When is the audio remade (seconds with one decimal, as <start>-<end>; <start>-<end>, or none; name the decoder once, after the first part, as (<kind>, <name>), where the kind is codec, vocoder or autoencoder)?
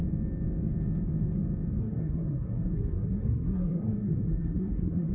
1.8-5.1 (codec, SNAC)